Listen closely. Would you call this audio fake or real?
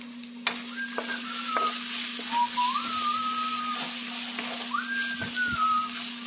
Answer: real